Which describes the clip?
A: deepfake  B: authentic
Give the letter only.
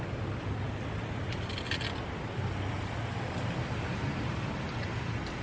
B